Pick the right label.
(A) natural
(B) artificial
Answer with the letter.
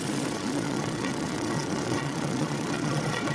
B